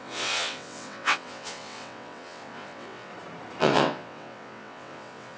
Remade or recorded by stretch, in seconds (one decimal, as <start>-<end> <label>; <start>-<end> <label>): 0.0-3.1 remade; 3.1-3.6 recorded; 3.6-5.4 remade